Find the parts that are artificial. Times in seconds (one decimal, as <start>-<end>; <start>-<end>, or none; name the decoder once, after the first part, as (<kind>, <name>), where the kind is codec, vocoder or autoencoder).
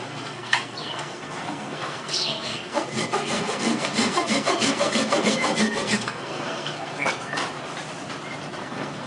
0.0-7.4 (codec, SNAC); 8.6-9.1